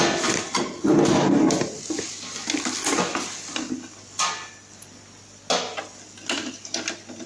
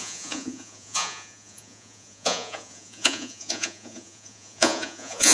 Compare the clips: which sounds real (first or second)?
first